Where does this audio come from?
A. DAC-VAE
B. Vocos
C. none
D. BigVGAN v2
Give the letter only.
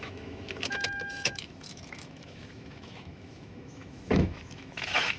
A